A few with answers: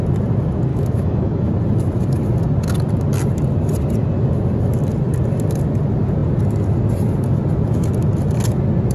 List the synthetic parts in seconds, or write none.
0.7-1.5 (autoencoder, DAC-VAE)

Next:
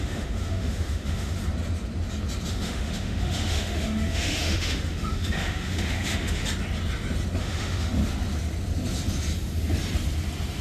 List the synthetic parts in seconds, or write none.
0.0-1.4 (autoencoder, DAC-VAE); 2.5-6.4; 7.4-8.0

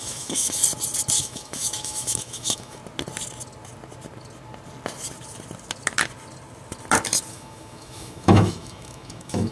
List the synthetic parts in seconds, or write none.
0.0-0.6 (autoencoder, DAC-VAE); 1.2-2.8; 7.3-9.5

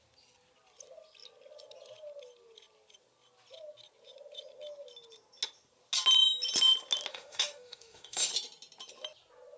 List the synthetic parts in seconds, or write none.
7.1-8.3 (autoencoder, DAC-VAE)